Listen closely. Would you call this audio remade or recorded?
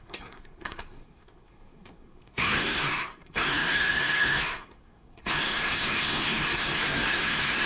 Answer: remade